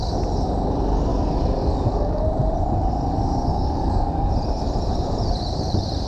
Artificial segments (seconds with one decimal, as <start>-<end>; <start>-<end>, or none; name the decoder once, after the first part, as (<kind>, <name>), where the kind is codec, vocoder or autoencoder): 1.1-2.2 (codec, DAC); 3.5-4.3